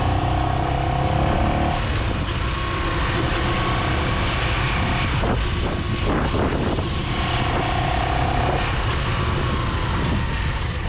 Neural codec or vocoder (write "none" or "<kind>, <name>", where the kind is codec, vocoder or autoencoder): none